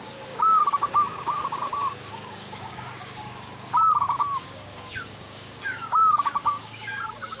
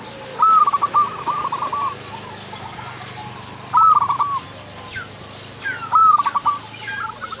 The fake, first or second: first